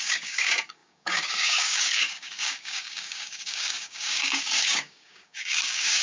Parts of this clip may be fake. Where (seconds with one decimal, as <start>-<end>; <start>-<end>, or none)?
0.0-6.0